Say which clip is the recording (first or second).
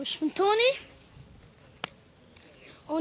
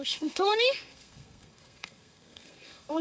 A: first